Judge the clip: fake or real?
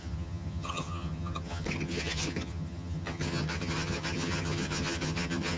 fake